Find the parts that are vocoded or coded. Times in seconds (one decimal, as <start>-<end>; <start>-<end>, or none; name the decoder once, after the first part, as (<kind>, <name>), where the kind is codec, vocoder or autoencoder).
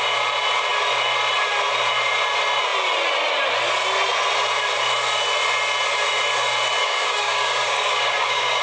6.8-8.6 (codec, DAC)